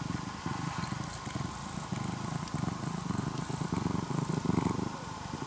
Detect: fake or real real